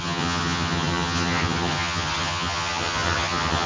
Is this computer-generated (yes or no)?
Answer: yes